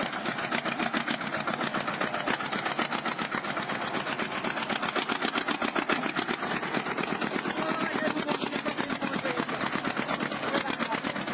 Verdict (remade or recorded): recorded